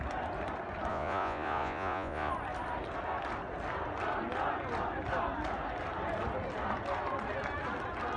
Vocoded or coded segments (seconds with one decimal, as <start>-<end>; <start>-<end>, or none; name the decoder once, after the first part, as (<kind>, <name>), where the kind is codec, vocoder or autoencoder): 0.9-2.3 (vocoder, Vocos)

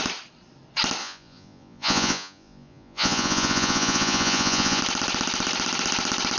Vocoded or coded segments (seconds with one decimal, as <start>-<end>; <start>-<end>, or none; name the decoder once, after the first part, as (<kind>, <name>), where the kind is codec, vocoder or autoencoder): 1.0-4.8 (vocoder, Vocos)

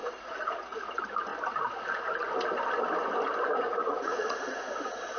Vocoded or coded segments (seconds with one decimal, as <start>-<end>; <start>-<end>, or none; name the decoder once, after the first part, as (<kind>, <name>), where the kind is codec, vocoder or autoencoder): 0.0-0.9 (vocoder, Vocos); 3.8-5.2